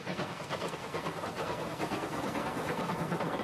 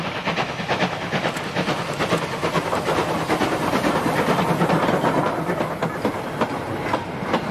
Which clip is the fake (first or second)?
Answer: first